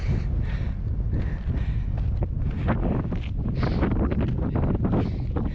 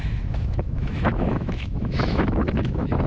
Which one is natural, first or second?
first